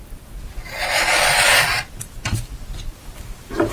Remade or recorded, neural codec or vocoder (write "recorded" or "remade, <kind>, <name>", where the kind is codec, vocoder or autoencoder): recorded